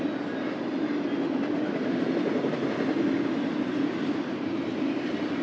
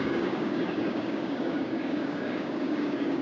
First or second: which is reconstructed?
second